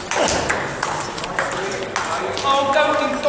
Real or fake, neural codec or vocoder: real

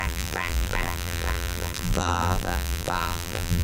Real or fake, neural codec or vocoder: fake, vocoder, BigVGAN v2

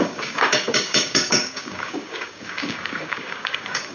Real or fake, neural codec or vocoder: fake, codec, DAC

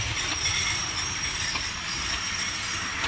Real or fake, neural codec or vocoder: real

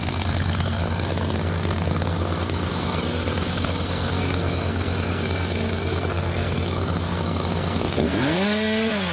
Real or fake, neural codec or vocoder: fake, codec, SNAC